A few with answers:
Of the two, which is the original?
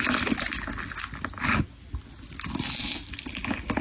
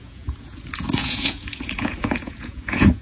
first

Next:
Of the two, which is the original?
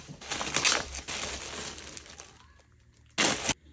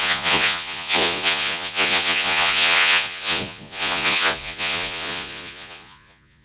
first